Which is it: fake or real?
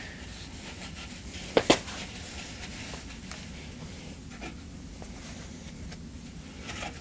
real